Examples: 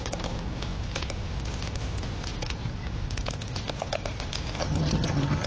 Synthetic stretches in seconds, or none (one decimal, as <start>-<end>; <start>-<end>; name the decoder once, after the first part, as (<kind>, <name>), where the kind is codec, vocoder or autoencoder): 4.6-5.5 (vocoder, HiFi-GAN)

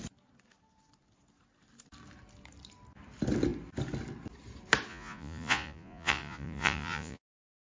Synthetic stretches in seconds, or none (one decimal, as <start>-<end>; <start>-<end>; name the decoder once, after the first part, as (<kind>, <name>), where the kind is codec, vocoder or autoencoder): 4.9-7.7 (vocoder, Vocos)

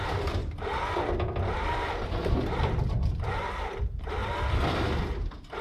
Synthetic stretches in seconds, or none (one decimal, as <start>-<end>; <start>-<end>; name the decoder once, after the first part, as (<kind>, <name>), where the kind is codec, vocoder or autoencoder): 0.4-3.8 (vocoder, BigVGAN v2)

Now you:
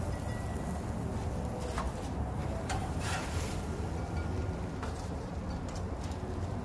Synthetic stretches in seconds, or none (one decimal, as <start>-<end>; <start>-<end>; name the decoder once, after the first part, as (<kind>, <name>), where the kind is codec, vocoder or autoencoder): 2.4-3.8 (vocoder, BigVGAN v2); 4.7-5.3

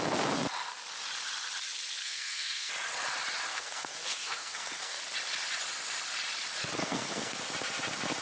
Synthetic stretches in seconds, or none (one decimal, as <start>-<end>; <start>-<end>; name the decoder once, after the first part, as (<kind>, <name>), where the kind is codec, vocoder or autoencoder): 2.0-2.7 (codec, SNAC); 3.5-5.0; 6.6-7.4

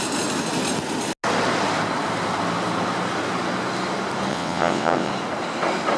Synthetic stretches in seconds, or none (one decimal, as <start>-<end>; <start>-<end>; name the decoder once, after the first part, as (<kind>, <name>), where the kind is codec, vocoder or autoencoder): 4.3-5.1 (vocoder, WaveNeXt)

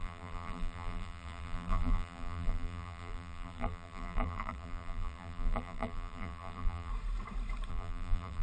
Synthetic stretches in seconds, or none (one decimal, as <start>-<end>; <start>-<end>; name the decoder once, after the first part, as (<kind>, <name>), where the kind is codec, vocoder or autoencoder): 0.0-6.9 (vocoder, BigVGAN v2); 7.7-8.4

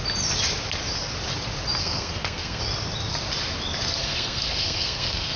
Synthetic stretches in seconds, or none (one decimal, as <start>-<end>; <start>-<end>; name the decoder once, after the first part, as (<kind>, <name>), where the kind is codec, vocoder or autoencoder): 1.8-2.6 (codec, SNAC); 4.0-5.4